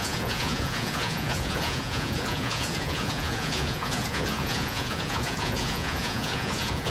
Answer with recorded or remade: remade